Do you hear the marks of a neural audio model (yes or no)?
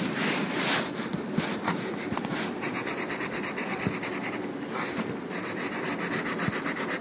no